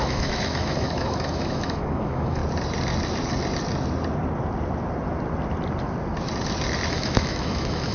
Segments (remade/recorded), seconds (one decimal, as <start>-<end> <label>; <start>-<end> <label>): 0.0-2.4 remade; 2.4-6.9 recorded; 6.9-7.9 remade